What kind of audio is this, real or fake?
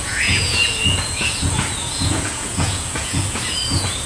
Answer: fake